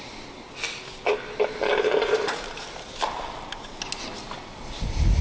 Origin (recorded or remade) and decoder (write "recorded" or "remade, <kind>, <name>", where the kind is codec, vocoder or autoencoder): recorded